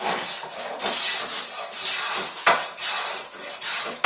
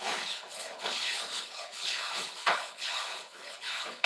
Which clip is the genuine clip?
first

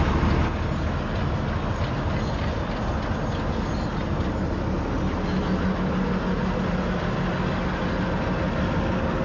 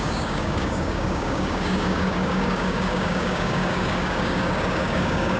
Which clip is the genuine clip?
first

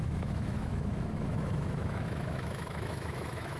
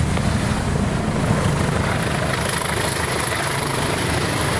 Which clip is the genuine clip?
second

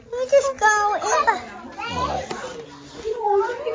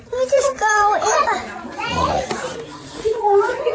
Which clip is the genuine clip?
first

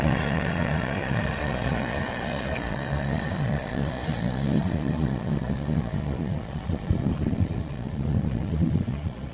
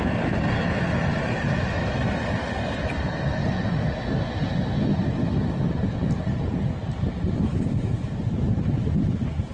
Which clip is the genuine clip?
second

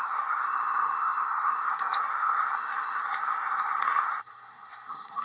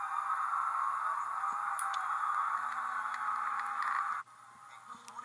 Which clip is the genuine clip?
second